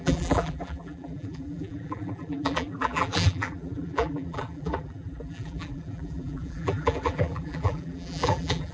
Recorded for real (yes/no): no